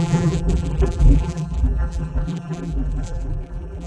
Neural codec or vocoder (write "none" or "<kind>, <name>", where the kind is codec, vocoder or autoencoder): vocoder, BigVGAN v2